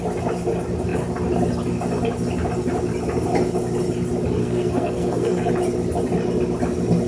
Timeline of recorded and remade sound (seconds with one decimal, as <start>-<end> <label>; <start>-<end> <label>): 0.0-4.4 recorded; 4.4-5.5 remade; 5.5-7.1 recorded